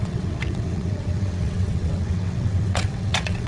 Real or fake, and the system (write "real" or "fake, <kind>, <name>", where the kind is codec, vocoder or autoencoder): fake, vocoder, WaveNeXt